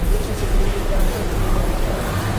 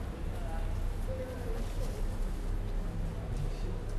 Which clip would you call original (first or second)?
second